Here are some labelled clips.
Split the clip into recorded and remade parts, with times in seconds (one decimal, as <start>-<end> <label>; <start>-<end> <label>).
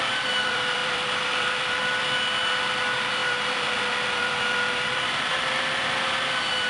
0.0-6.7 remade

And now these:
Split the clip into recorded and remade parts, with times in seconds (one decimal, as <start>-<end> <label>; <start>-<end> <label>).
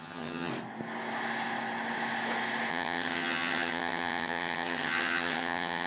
0.0-0.5 remade; 0.5-2.7 recorded; 2.7-5.9 remade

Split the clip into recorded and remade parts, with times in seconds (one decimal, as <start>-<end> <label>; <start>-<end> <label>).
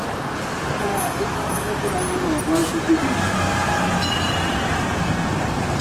0.0-0.9 recorded; 0.9-1.9 remade; 1.9-5.8 recorded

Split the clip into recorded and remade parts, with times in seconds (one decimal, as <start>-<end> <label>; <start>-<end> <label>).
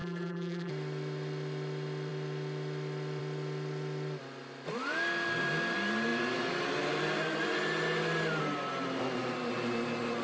0.0-0.7 remade; 0.7-10.2 recorded